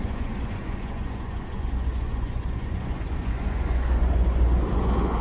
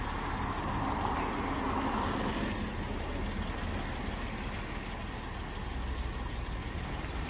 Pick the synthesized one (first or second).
first